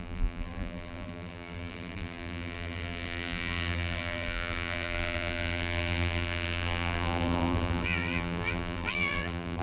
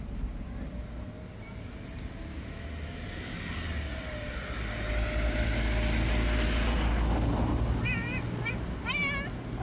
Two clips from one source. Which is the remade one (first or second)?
first